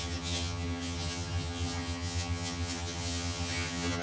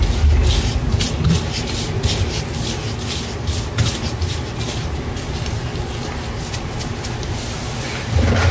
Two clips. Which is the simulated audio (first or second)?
first